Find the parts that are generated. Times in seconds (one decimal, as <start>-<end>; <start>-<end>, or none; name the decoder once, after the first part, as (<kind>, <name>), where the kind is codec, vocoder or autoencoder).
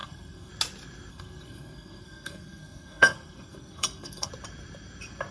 0.0-0.5 (codec, SNAC); 1.1-4.3